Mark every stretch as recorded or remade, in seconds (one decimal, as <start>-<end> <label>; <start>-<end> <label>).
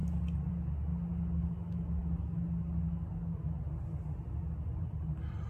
0.0-5.5 recorded